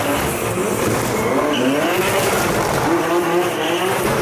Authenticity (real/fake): real